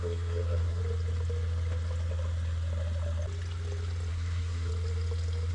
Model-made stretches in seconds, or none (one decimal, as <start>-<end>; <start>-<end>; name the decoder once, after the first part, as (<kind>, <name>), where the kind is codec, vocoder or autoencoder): 0.0-0.8 (codec, SNAC); 4.1-4.7